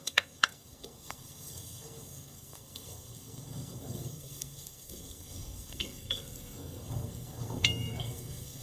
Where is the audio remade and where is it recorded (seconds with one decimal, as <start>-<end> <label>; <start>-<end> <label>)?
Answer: 0.0-8.6 remade